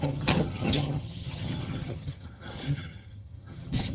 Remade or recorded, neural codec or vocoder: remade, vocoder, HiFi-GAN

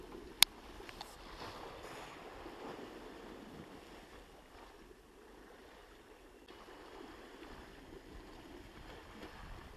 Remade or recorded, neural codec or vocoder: recorded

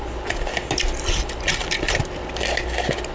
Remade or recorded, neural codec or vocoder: recorded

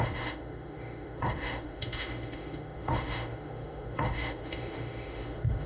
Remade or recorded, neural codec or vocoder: remade, autoencoder, DAC-VAE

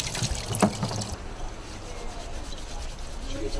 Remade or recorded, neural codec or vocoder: recorded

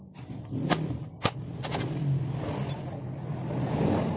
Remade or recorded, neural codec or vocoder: recorded